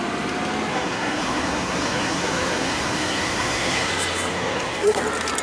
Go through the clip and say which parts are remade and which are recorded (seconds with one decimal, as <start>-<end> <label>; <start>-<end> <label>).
0.0-0.7 recorded; 0.7-3.9 remade; 3.9-4.3 recorded; 4.3-5.0 remade; 5.0-5.4 recorded